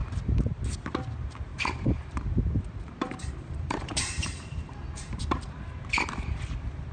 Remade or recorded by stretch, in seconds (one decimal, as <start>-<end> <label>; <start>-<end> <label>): 0.0-1.5 recorded; 1.5-5.5 remade; 5.5-6.9 recorded